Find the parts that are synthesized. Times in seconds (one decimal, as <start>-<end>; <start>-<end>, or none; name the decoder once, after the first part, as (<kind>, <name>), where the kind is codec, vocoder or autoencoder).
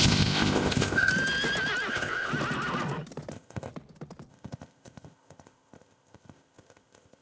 0.0-1.1 (codec, ZipCodec); 1.9-2.3; 3.3-3.7; 4.3-7.2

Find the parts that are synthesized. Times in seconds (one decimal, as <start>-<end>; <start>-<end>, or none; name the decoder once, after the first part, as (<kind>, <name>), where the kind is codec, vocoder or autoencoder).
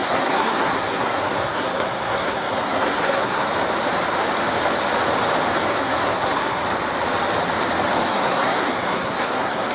0.0-3.5 (codec, SNAC); 5.8-6.6; 8.1-9.7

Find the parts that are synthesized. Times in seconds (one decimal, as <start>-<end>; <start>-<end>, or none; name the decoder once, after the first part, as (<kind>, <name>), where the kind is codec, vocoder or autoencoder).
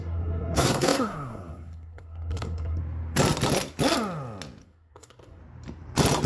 0.0-2.8 (codec, SNAC); 4.6-5.4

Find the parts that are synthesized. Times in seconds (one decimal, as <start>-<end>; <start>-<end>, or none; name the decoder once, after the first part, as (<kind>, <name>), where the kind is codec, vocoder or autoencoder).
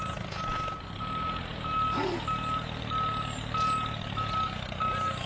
none